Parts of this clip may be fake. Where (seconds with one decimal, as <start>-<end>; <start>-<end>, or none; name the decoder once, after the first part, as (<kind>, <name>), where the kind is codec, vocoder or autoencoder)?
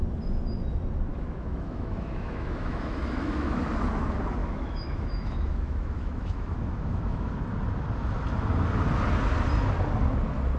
1.1-3.6 (autoencoder, DAC-VAE); 4.4-7.3